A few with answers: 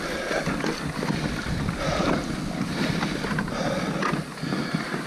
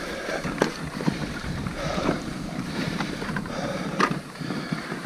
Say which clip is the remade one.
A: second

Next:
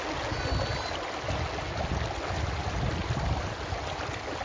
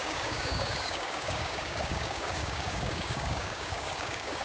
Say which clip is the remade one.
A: second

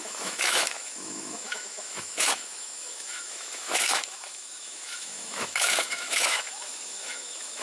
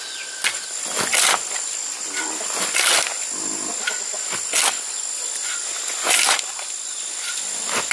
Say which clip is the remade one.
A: first